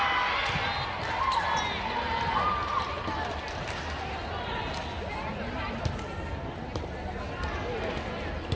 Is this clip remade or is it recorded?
recorded